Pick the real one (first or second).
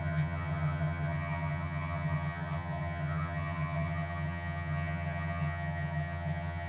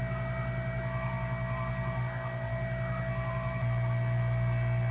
second